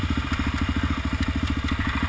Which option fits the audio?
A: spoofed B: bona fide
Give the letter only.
B